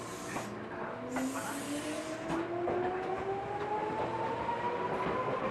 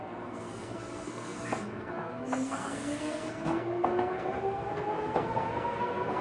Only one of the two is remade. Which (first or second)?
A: second